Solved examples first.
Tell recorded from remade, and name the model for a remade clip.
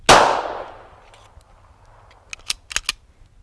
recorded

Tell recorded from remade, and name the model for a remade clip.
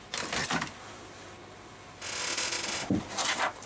recorded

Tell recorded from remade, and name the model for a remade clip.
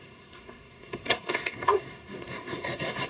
remade, codec, SNAC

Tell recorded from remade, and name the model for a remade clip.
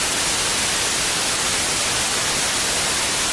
recorded